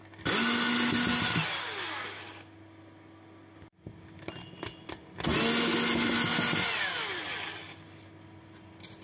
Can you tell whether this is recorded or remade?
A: recorded